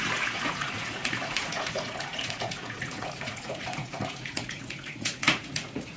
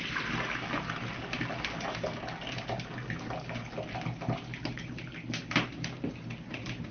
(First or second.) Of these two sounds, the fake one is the first